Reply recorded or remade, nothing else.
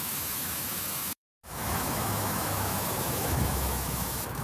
remade